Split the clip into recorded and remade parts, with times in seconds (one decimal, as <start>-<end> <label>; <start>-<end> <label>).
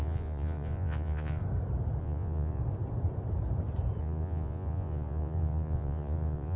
0.0-1.4 remade; 1.4-2.0 recorded; 2.0-2.6 remade; 2.6-4.0 recorded; 4.0-6.6 remade